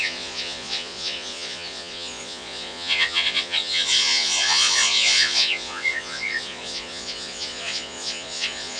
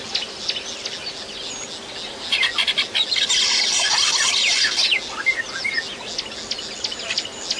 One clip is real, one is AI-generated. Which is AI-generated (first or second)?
first